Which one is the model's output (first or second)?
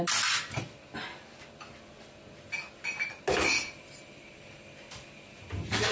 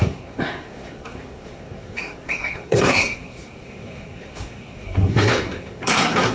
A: second